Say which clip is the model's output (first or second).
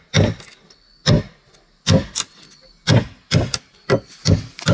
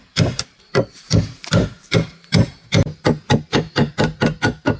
second